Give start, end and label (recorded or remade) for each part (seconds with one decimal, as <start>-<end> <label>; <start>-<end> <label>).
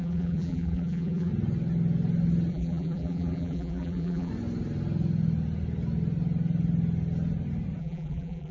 0.0-1.3 remade; 1.3-2.5 recorded; 2.5-4.3 remade; 4.3-7.8 recorded; 7.8-8.5 remade